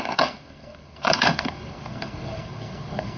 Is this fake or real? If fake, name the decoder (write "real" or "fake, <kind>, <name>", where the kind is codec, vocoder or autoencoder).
fake, codec, SNAC